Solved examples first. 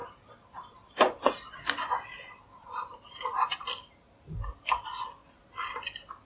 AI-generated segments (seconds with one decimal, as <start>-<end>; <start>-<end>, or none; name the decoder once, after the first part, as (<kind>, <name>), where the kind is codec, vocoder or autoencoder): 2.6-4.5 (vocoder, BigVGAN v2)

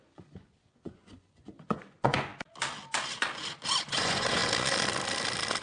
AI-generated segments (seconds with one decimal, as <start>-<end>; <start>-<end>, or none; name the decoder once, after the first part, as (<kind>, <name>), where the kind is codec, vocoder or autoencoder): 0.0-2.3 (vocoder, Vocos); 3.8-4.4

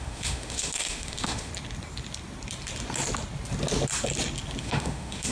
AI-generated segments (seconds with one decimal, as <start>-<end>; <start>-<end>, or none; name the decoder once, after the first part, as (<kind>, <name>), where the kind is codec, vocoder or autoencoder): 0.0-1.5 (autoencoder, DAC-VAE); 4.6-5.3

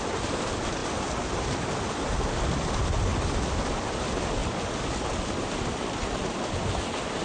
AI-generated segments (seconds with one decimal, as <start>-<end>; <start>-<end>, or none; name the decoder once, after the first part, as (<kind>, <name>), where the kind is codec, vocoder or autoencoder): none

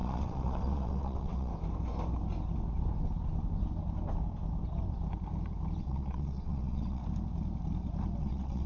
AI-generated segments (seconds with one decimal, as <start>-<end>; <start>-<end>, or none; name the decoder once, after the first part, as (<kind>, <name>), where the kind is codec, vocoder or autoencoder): 0.0-1.5 (vocoder, WaveNeXt); 5.8-7.0; 8.2-8.7

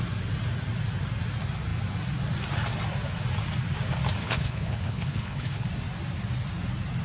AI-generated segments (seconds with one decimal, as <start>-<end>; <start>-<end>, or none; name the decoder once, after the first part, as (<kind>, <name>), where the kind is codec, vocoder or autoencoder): 4.2-5.7 (codec, HILCodec)